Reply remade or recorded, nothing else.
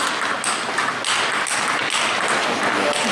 recorded